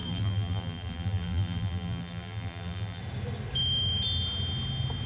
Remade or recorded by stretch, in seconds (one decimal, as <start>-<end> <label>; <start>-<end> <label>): 0.0-3.0 remade; 3.0-5.1 recorded

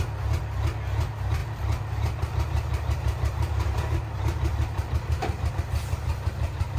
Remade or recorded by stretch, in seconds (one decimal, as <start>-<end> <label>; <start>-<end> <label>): 0.0-1.4 recorded; 1.4-5.5 remade; 5.5-6.8 recorded

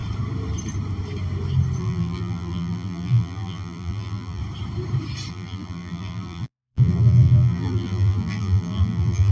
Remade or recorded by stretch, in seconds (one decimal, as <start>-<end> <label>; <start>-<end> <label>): 0.0-1.8 recorded; 1.8-4.4 remade; 4.4-5.3 recorded; 5.3-9.3 remade

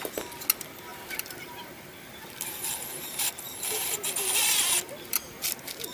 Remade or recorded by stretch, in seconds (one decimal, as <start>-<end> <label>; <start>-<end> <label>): 0.0-0.9 recorded; 0.9-4.4 remade; 4.4-5.9 recorded